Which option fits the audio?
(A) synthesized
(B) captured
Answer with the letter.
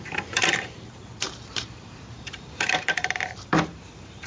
A